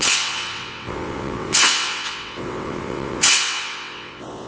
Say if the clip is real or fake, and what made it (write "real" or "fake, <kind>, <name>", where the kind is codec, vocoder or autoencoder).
fake, vocoder, WaveNeXt